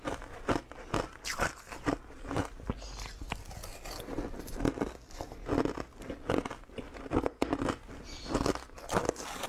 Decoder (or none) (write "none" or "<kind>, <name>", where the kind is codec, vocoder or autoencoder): none